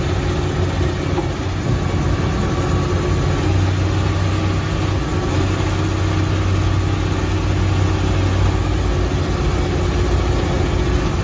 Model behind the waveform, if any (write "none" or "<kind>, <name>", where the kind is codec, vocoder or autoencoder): none